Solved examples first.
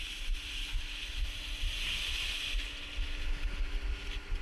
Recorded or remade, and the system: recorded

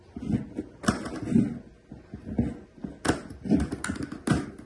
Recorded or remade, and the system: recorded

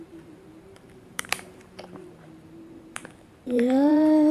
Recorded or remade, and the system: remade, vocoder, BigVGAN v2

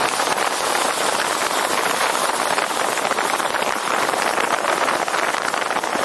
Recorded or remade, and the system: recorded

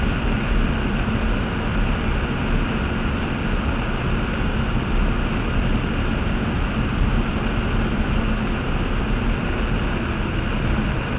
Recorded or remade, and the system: recorded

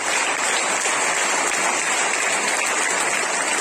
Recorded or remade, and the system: recorded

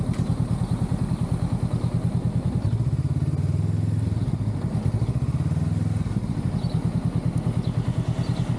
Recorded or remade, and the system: recorded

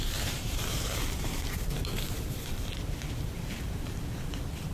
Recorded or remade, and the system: remade, vocoder, BigVGAN v2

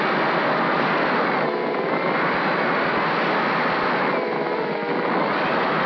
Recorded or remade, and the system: recorded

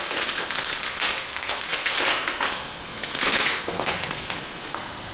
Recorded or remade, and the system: remade, codec, SNAC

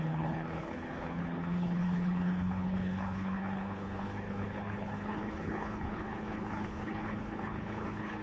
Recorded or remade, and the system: remade, codec, HILCodec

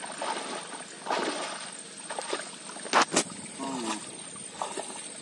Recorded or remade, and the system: recorded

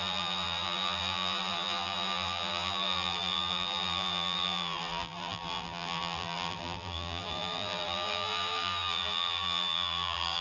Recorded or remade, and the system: remade, vocoder, BigVGAN v2